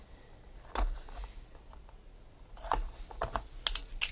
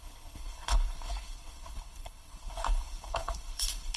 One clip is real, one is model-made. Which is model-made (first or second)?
second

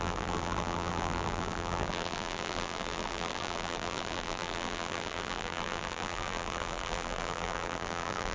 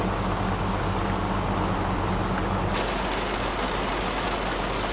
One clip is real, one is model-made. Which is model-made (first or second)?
first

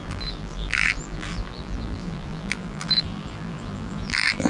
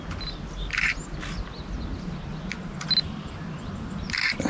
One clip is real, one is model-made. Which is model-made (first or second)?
first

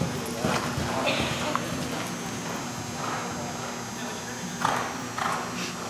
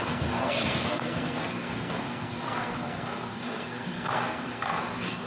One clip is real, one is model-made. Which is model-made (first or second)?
second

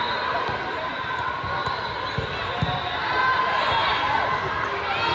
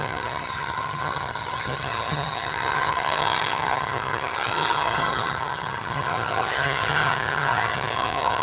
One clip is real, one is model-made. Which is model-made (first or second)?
second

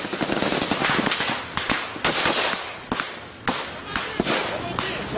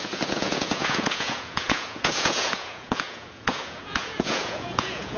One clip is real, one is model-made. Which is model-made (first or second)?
second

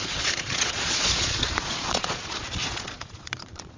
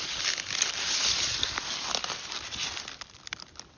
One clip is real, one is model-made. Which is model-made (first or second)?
first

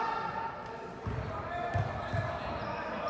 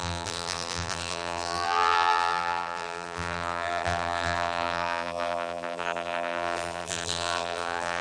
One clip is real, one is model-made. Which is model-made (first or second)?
second